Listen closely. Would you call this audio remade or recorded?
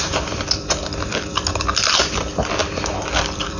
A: remade